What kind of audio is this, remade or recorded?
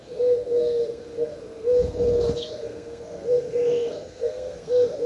remade